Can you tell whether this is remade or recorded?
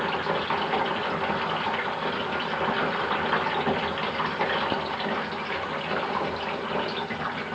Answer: recorded